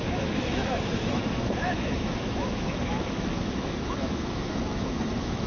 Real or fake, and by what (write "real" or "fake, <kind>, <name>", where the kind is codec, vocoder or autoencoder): fake, autoencoder, DAC-VAE